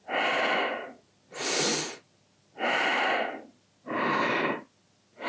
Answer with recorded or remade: recorded